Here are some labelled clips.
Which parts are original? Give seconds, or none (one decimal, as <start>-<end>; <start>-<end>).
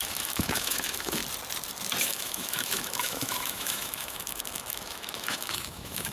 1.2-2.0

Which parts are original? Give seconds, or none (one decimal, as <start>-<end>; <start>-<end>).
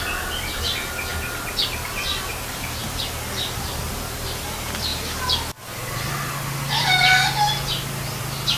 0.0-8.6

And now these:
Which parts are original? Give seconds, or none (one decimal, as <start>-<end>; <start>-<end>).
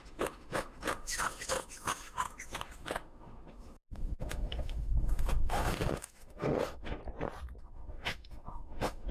7.0-7.6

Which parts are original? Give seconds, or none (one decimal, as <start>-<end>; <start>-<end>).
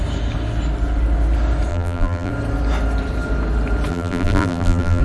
0.0-1.7; 2.3-3.9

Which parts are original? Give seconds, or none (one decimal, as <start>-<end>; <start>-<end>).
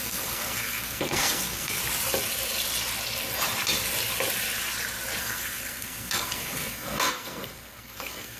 1.8-5.2